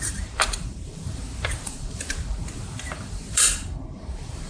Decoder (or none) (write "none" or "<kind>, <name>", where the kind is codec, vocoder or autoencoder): vocoder, BigVGAN v2